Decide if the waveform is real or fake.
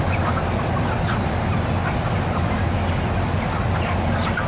real